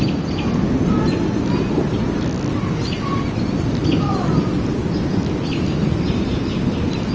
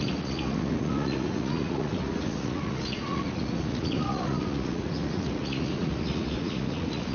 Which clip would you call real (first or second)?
first